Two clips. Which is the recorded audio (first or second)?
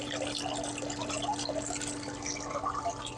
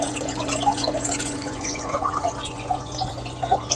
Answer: first